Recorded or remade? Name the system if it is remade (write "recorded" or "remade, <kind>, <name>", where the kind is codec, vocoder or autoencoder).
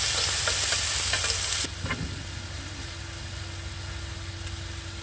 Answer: recorded